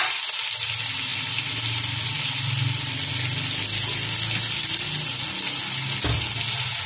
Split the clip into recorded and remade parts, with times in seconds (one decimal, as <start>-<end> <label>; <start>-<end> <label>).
0.0-6.9 recorded